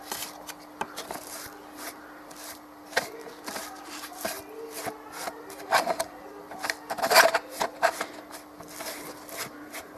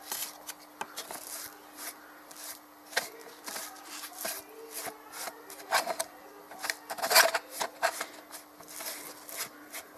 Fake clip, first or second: first